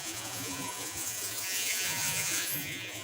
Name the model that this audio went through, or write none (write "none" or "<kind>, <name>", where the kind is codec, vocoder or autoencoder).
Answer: vocoder, Vocos